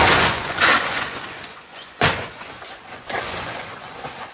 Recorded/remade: remade